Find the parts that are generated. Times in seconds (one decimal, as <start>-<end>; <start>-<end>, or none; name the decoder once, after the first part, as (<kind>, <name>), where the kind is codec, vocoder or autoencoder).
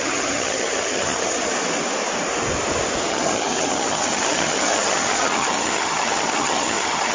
0.0-1.5 (vocoder, HiFi-GAN); 3.1-7.1